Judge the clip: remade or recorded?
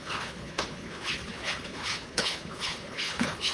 remade